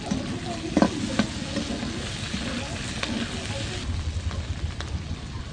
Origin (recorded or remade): recorded